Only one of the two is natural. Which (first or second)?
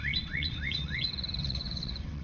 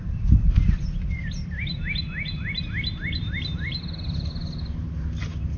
second